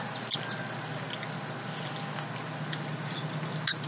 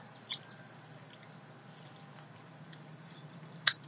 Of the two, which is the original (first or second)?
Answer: first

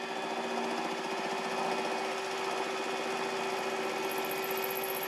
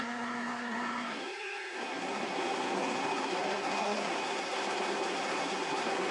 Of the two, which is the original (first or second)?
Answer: first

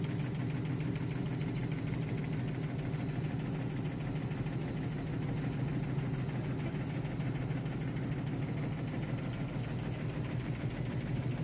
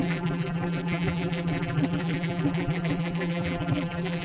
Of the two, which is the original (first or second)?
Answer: first